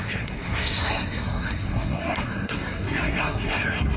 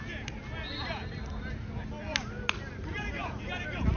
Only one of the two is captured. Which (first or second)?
second